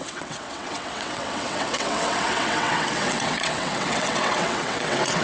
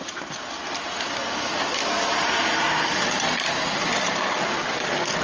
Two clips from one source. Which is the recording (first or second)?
second